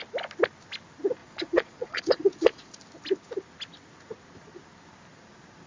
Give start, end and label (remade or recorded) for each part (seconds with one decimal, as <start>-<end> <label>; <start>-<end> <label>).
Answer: 0.0-1.2 recorded; 1.2-2.7 remade; 2.7-5.7 recorded